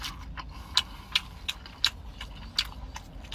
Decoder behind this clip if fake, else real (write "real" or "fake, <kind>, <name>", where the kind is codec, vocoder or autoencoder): real